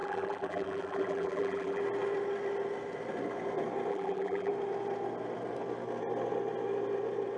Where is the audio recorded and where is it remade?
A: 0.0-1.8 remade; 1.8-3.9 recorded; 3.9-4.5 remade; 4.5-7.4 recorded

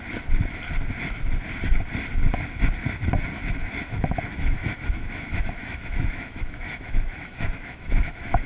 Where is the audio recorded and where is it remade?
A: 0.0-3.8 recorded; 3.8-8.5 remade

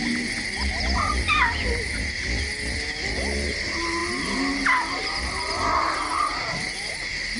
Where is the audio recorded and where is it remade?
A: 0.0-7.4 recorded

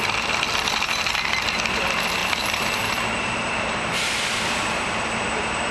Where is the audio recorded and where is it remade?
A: 0.0-2.2 recorded; 2.2-5.7 remade